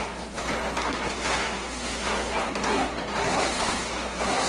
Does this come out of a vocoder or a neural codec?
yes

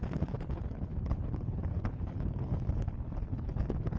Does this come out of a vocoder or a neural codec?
yes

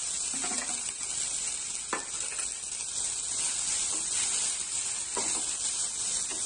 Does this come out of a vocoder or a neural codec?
no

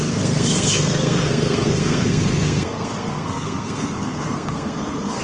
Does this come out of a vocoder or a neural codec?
yes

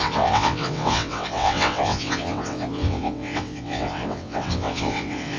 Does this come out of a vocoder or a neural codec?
yes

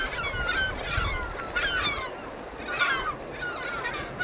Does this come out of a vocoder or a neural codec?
no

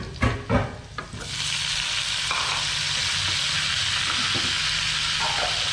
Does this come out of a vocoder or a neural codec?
no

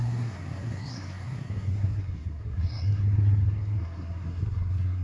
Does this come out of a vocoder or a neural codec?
yes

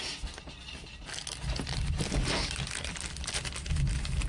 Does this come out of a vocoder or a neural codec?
no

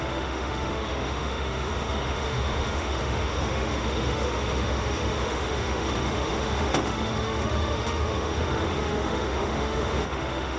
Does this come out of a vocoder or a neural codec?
yes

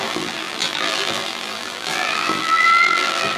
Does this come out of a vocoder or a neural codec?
yes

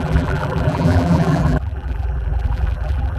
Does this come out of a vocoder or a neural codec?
yes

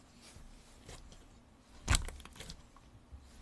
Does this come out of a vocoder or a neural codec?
no